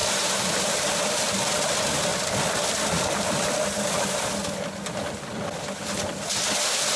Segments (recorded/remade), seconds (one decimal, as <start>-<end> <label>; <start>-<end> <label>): 0.0-1.5 remade; 1.5-2.1 recorded; 2.1-6.3 remade; 6.3-7.0 recorded